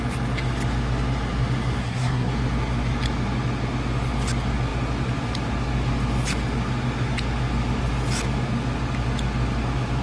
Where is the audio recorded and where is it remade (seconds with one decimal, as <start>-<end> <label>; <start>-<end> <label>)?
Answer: 0.0-1.8 recorded; 1.8-2.3 remade; 2.3-10.0 recorded